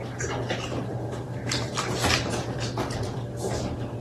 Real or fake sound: real